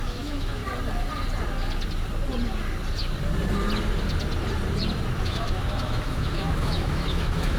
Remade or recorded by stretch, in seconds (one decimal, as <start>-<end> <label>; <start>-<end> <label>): 0.0-0.6 remade; 0.6-5.2 recorded; 5.2-7.6 remade